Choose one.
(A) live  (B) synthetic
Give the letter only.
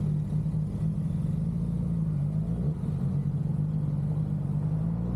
A